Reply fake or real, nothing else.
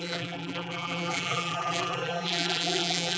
fake